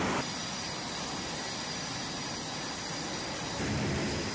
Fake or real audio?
real